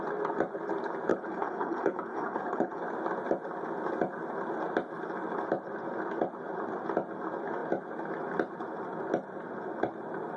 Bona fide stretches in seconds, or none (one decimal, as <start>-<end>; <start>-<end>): 0.0-1.1; 2.8-10.4